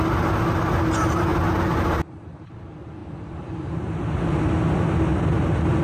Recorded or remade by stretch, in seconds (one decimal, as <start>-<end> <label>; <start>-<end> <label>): 0.0-3.0 recorded; 3.0-4.1 remade; 4.1-5.8 recorded